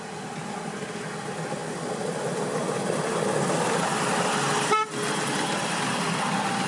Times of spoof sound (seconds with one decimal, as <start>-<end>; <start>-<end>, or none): none